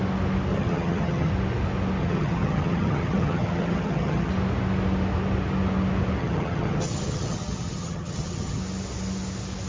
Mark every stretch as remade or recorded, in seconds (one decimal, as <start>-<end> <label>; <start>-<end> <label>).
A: 0.0-0.5 recorded; 0.5-1.3 remade; 1.3-2.0 recorded; 2.0-4.3 remade; 4.3-6.2 recorded; 6.2-8.6 remade; 8.6-9.7 recorded